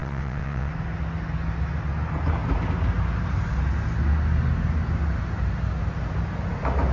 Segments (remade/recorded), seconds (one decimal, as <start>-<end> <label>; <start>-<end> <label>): 0.0-0.7 remade; 0.7-6.9 recorded